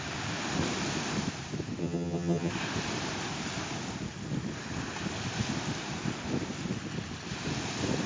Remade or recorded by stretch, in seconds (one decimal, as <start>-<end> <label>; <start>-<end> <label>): 0.0-1.8 recorded; 1.8-2.5 remade; 2.5-8.1 recorded